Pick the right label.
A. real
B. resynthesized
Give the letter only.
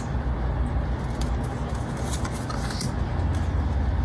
A